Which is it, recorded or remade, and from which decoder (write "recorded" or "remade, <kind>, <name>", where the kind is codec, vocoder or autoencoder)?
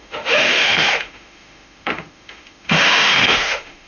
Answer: remade, autoencoder, DAC-VAE